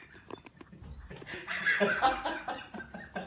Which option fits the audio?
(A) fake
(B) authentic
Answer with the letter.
B